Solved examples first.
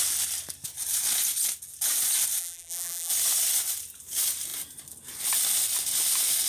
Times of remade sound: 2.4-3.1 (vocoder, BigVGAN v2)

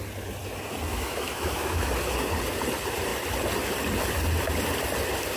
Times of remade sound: 0.9-1.9 (autoencoder, DAC-VAE)

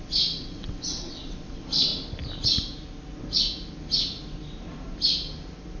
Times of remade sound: 0.0-1.9 (vocoder, WaveNeXt)

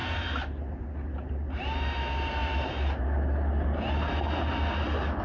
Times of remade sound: none